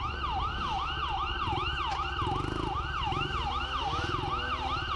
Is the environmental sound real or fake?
real